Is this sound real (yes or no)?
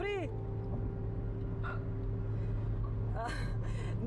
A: yes